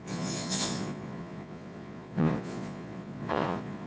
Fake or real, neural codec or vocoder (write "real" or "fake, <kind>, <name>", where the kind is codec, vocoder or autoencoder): fake, vocoder, Vocos